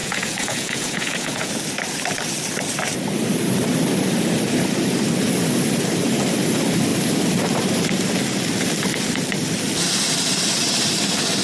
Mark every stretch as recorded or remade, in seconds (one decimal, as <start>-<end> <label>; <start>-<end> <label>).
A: 0.0-1.5 remade; 1.5-11.4 recorded